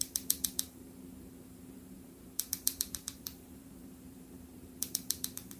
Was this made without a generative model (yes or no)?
no